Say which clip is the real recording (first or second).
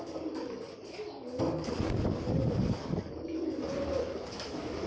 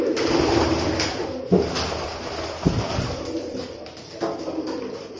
second